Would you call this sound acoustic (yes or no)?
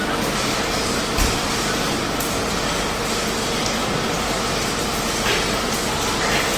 yes